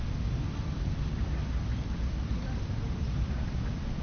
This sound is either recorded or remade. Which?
recorded